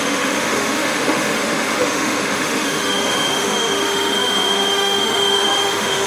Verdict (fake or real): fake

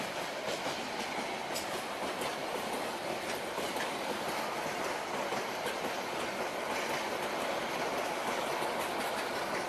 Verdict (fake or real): real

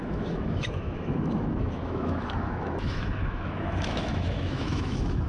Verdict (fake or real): fake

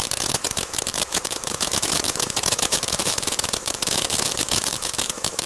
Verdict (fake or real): fake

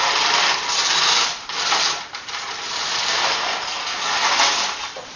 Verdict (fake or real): real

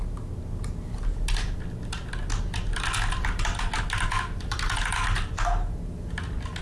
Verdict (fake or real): real